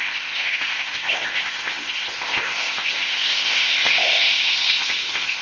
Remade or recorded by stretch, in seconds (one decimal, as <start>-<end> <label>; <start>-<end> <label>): 0.0-5.4 remade